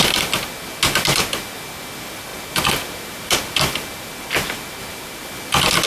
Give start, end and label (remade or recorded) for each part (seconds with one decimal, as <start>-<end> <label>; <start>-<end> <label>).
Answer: 0.0-5.9 recorded